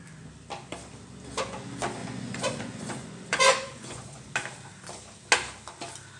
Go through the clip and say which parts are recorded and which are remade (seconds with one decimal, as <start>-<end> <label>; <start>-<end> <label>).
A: 0.0-2.0 recorded; 2.0-4.3 remade; 4.3-6.2 recorded